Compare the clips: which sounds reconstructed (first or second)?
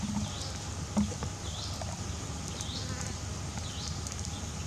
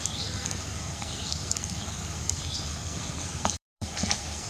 second